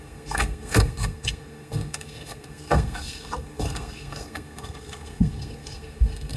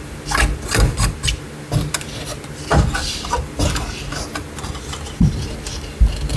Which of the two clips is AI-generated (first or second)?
first